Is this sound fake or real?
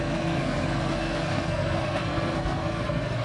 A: fake